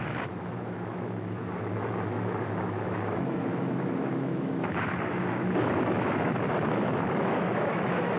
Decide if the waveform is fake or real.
fake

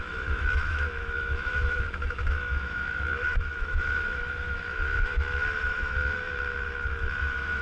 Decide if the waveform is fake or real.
fake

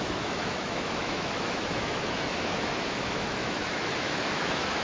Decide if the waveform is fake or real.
fake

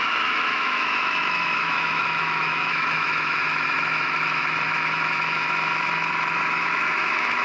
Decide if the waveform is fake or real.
fake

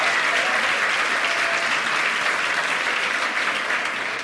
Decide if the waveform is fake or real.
real